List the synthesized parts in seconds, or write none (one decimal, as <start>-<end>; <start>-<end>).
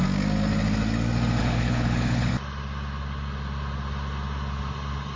1.4-2.3